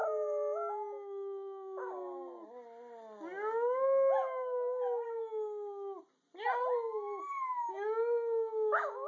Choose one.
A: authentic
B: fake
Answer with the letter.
A